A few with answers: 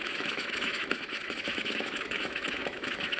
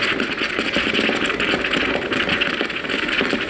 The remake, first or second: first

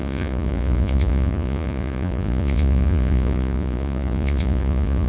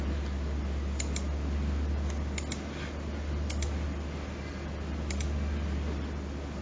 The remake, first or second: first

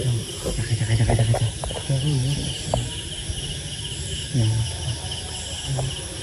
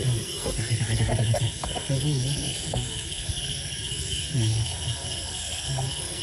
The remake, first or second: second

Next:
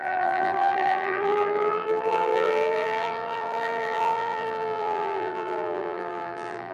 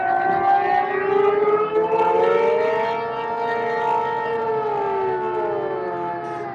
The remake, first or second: first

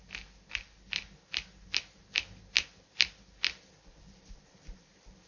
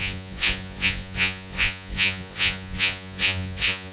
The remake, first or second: second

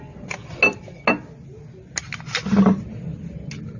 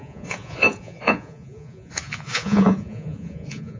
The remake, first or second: second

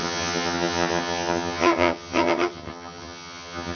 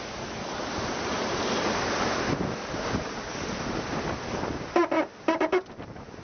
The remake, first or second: first